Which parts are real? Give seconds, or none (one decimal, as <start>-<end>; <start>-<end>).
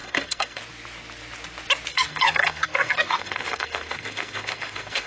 0.6-1.9